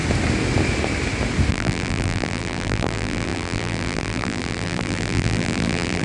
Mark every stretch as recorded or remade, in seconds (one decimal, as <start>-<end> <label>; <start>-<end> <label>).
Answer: 0.0-1.5 recorded; 1.5-6.0 remade